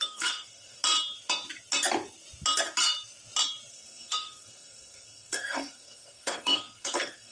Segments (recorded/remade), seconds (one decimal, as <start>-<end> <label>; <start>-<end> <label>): 0.0-0.8 remade; 0.8-3.7 recorded; 3.7-7.3 remade